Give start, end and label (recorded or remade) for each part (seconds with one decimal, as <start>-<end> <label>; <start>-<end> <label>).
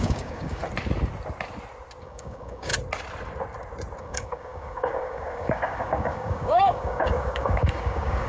0.0-0.6 remade; 0.6-2.0 recorded; 2.0-2.7 remade; 2.7-4.0 recorded; 4.0-8.3 remade